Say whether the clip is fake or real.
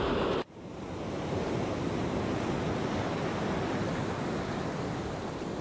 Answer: real